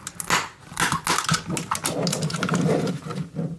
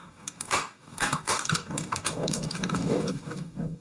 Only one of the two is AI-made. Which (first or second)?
second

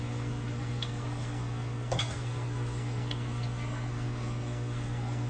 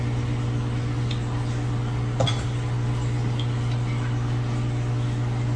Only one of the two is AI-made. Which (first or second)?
first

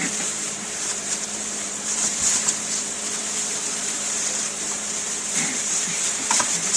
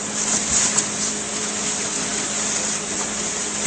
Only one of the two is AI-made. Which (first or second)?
first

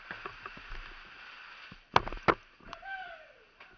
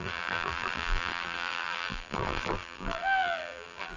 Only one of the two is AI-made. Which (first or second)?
second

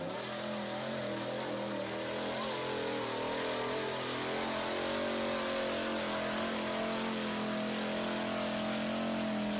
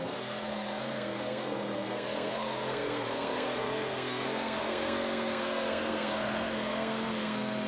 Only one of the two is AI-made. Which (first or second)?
second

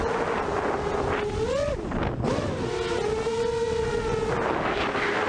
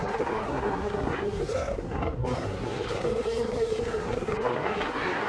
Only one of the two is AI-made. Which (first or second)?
second